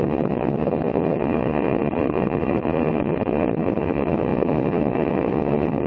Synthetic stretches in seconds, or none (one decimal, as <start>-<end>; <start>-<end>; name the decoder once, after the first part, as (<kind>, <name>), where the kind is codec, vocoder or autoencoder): 0.0-5.9 (vocoder, Vocos)